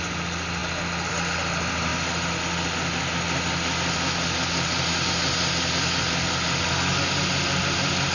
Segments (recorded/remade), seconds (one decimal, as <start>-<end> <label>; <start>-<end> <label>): 0.0-8.1 recorded